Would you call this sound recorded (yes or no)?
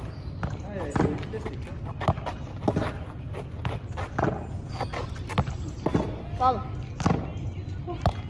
yes